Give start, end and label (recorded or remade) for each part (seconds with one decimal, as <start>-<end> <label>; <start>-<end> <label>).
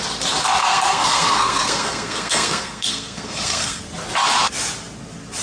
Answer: 0.0-0.6 recorded; 0.6-3.8 remade; 3.8-5.4 recorded